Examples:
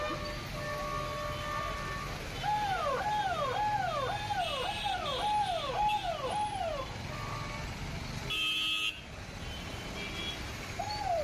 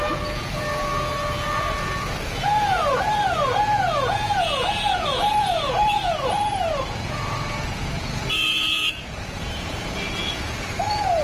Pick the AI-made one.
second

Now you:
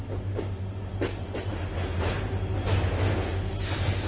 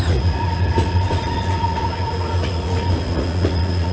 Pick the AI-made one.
second